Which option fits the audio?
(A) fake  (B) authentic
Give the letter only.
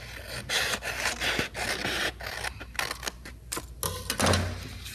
B